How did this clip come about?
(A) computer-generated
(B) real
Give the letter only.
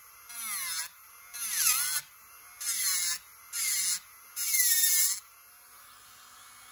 B